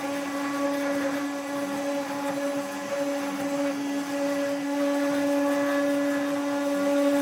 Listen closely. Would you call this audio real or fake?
real